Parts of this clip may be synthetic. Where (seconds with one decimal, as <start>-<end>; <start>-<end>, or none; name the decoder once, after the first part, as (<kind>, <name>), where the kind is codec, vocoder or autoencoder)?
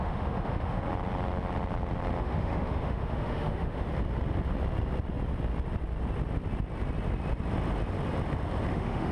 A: 0.0-0.9 (autoencoder, DAC-VAE); 2.2-3.9; 8.7-9.1